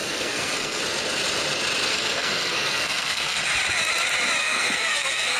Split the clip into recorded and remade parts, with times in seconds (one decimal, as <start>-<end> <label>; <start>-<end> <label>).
0.0-0.8 remade; 0.8-1.9 recorded; 1.9-3.4 remade; 3.4-4.4 recorded; 4.4-5.4 remade